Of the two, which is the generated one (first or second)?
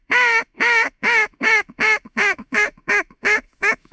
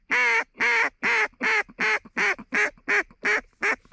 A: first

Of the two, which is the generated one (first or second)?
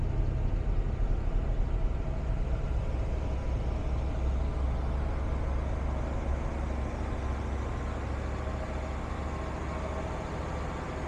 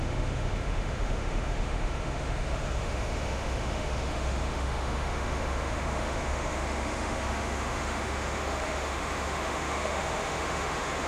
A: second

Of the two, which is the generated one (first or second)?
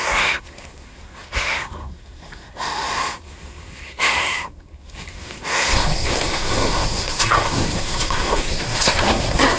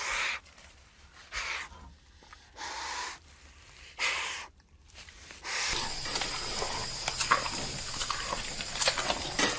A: first